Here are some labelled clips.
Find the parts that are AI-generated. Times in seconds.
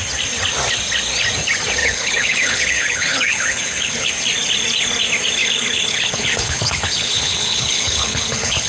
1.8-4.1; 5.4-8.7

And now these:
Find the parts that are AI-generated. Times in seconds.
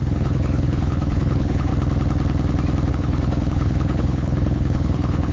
0.0-1.7; 2.9-5.3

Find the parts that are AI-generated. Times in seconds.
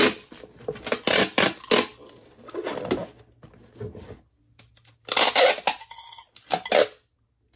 none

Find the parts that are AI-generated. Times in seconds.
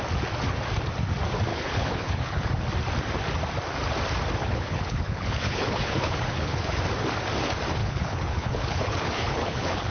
1.5-2.5; 4.4-6.8; 7.8-9.9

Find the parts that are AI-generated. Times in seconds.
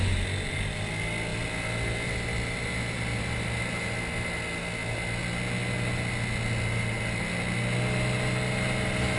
none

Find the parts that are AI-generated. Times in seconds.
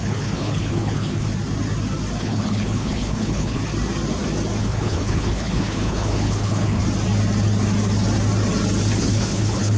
0.0-1.3; 2.2-3.6; 4.6-6.8; 9.0-9.8